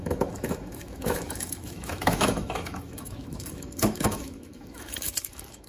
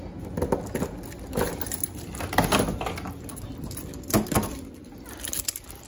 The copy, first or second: first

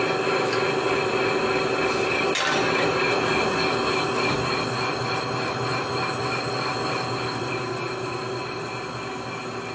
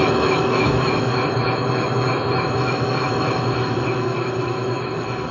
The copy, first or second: second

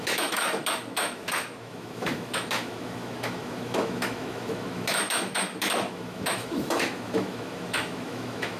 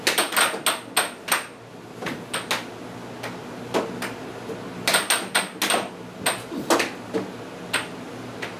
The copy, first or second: first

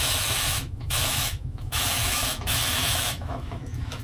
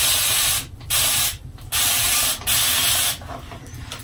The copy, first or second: first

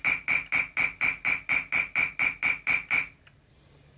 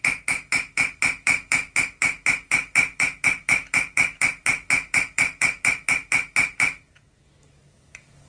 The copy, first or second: second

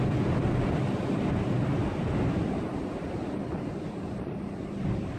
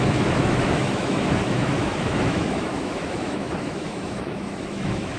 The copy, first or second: second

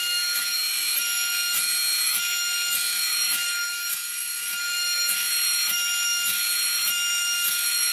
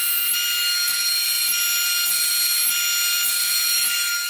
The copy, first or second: first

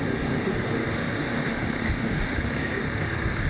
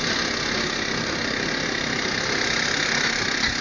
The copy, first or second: first